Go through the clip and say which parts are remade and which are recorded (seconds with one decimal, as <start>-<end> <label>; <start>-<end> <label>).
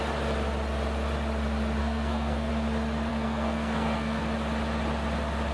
0.0-1.8 recorded; 1.8-2.5 remade; 2.5-3.1 recorded; 3.1-4.2 remade; 4.2-5.5 recorded